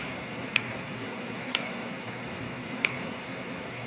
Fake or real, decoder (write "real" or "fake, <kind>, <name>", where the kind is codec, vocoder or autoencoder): fake, codec, SNAC